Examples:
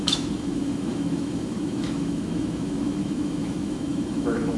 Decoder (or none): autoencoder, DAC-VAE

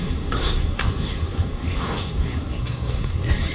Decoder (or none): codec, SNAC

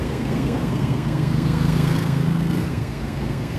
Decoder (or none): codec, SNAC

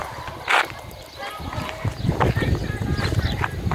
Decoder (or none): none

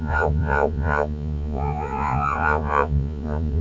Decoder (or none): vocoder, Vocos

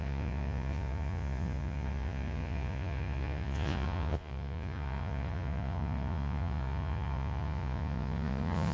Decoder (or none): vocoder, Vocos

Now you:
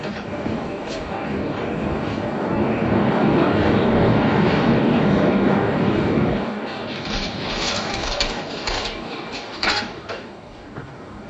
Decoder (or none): codec, DAC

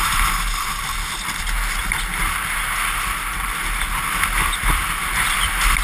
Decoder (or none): none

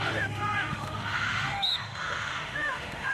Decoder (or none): autoencoder, DAC-VAE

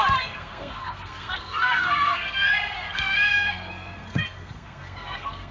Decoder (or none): codec, SNAC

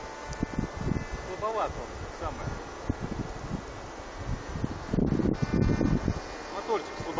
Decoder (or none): none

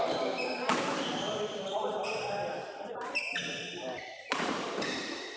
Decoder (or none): vocoder, BigVGAN v2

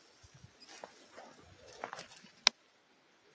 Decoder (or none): none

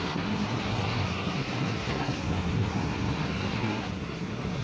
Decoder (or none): codec, SNAC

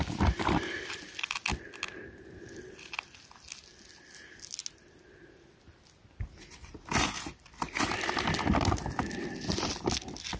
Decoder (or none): none